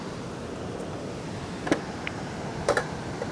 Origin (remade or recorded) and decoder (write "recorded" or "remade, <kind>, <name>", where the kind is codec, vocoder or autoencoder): recorded